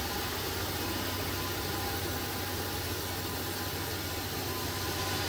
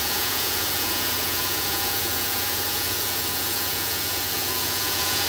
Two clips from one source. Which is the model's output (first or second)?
second